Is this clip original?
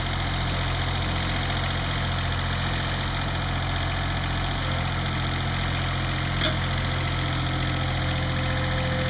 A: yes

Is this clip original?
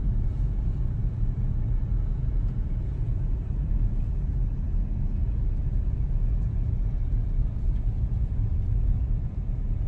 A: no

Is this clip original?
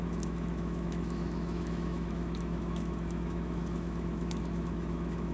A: no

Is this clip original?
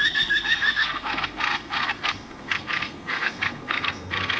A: no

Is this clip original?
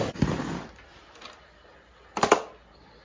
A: yes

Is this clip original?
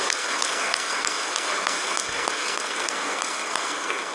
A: no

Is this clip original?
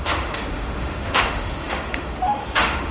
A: no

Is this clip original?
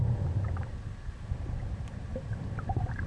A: yes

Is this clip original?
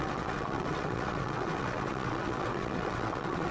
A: no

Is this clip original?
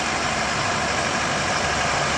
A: yes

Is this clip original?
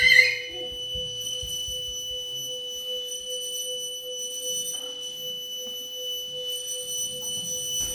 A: yes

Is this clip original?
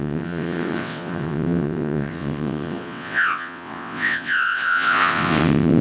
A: no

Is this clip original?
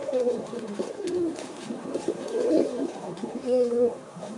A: no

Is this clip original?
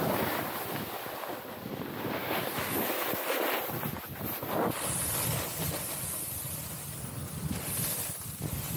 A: yes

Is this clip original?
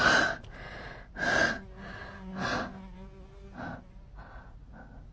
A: yes